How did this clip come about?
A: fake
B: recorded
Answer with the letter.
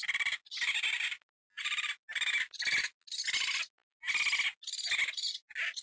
B